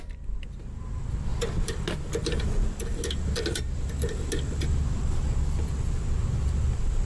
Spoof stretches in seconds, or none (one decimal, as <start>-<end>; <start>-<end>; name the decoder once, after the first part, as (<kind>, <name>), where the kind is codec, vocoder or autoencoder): none